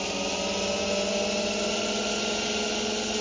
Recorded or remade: recorded